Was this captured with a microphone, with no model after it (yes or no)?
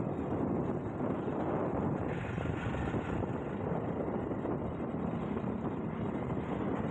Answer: yes